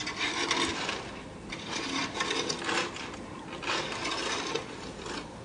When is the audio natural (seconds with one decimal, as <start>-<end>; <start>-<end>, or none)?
0.0-5.4